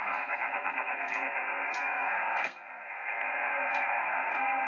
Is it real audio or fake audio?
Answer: fake